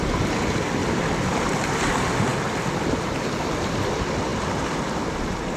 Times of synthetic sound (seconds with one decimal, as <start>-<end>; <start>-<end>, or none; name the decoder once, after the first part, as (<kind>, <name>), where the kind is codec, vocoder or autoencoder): 0.8-1.9 (vocoder, BigVGAN v2)